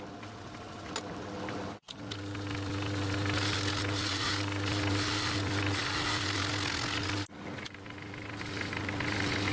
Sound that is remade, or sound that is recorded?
recorded